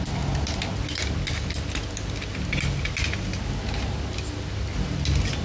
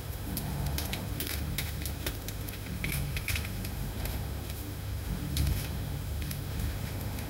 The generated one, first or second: second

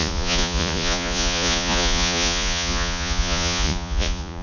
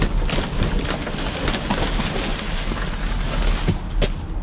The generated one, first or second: first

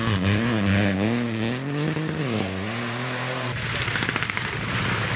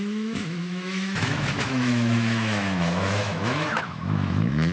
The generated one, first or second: second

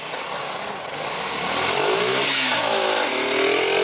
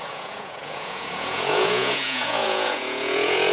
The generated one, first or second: second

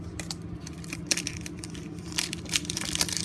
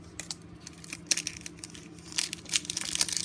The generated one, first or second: first